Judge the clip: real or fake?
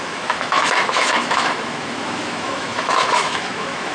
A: fake